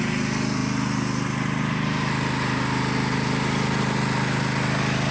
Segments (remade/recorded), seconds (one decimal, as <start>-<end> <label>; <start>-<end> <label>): 0.0-5.1 recorded